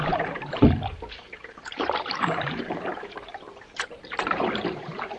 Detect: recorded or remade remade